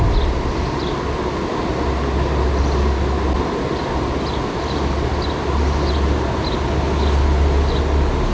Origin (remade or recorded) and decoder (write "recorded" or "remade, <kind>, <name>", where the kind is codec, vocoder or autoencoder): recorded